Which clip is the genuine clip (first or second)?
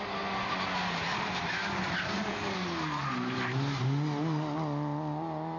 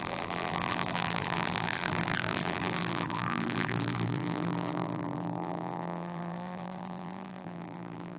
first